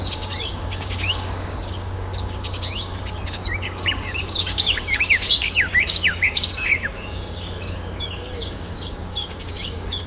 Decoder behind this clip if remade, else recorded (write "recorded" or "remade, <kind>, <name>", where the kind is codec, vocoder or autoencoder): remade, codec, DAC